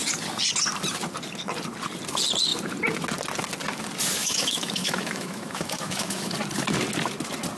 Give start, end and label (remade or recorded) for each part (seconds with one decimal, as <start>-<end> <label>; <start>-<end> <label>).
0.0-4.2 recorded; 4.2-6.3 remade; 6.3-7.6 recorded

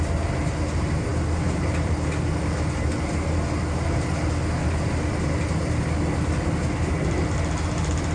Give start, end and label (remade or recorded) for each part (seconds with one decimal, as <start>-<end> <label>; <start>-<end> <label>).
0.0-8.1 recorded

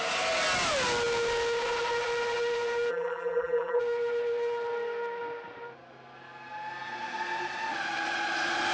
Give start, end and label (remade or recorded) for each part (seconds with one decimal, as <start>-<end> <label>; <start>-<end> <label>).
0.0-2.9 recorded; 2.9-3.8 remade; 3.8-8.7 recorded